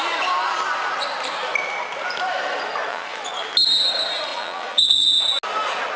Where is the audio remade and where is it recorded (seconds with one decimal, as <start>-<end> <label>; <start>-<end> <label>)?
0.0-2.9 recorded; 2.9-3.5 remade; 3.5-4.3 recorded; 4.3-5.2 remade; 5.2-6.0 recorded